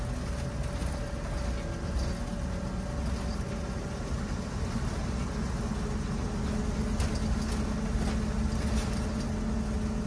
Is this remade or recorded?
recorded